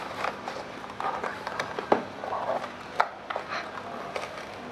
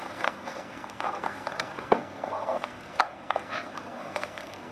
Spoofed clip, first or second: second